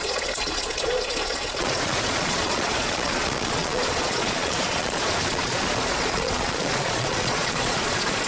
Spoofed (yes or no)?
yes